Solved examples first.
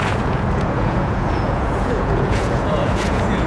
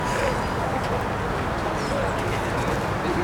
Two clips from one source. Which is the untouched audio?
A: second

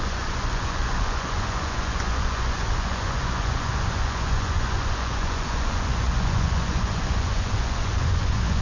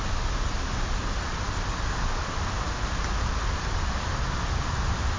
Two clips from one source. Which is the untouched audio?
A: second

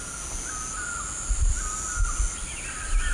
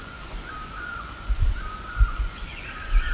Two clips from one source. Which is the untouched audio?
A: first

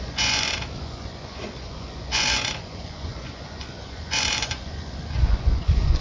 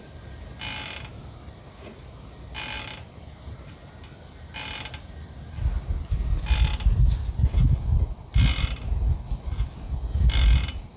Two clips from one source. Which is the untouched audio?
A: second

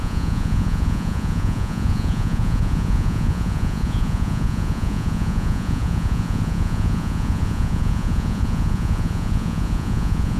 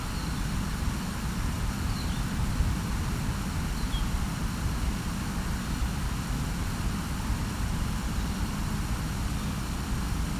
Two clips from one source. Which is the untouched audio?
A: second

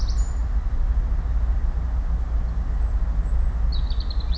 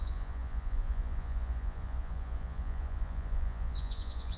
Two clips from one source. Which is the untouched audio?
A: first